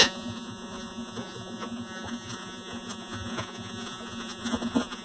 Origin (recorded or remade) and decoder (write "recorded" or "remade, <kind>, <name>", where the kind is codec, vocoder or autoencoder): remade, vocoder, Vocos